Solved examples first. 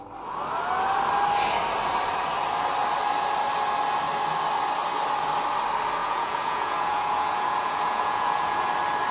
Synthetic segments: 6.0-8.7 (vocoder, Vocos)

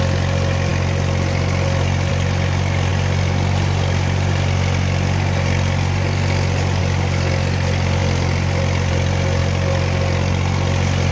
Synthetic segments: none

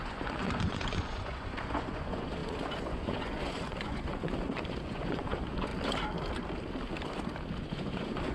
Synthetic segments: 0.0-5.7 (vocoder, Vocos); 7.6-8.3

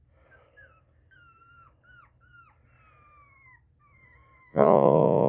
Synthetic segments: 4.5-5.3 (vocoder, Vocos)

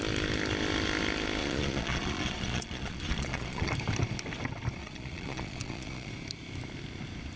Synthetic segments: 1.4-3.7 (vocoder, Vocos); 4.8-6.1

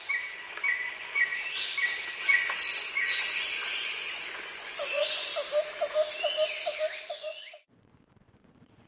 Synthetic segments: 0.0-1.3 (vocoder, Vocos); 2.2-5.3; 7.1-8.9

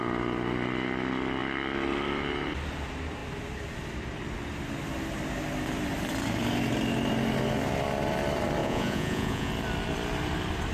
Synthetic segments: 8.6-9.5 (vocoder, Vocos)

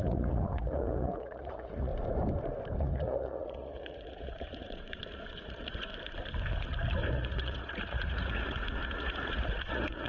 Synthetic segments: 0.0-1.9 (vocoder, Vocos); 2.8-5.9; 7.1-10.1